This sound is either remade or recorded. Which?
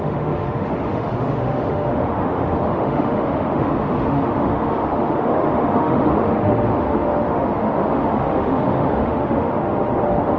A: remade